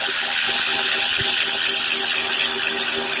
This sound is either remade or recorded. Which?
recorded